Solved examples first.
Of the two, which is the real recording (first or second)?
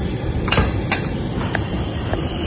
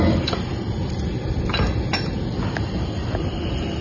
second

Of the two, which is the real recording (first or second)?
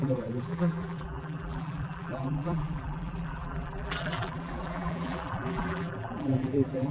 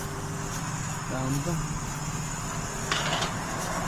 second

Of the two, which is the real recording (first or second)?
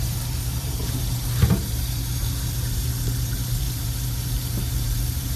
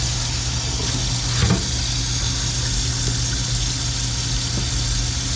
second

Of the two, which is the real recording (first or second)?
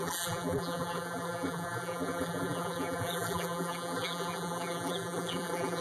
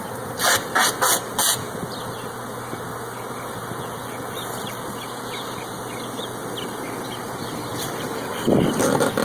second